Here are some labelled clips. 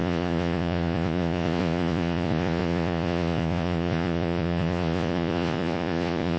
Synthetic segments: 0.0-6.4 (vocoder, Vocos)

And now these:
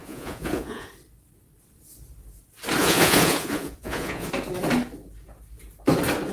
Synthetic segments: 0.0-0.9 (vocoder, Vocos); 2.8-4.3

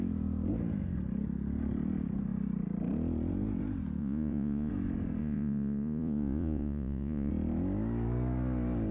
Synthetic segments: 4.0-4.7 (vocoder, Vocos); 5.2-7.3

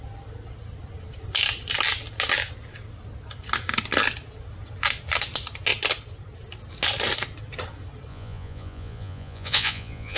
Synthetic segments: 8.1-10.2 (vocoder, Vocos)